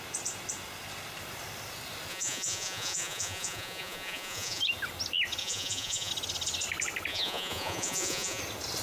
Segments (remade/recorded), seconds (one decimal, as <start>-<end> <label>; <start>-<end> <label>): 0.0-2.1 recorded; 2.1-4.6 remade; 4.6-5.4 recorded; 5.4-6.1 remade; 6.1-7.1 recorded; 7.1-8.4 remade; 8.4-8.8 recorded